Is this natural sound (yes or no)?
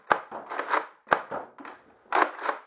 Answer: yes